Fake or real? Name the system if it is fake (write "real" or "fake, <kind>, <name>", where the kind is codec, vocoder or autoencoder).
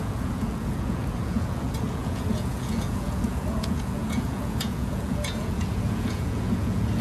fake, vocoder, Vocos